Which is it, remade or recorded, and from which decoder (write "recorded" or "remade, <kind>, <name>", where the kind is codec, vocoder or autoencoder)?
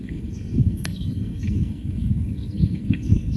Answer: remade, codec, SNAC